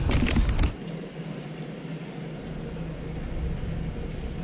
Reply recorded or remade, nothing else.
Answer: recorded